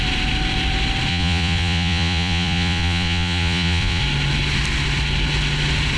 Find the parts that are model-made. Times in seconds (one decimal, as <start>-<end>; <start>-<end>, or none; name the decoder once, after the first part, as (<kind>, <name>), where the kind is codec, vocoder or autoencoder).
1.1-4.0 (vocoder, Vocos)